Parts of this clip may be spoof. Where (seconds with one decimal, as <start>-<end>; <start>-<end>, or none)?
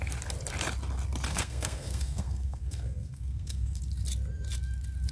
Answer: 1.3-3.8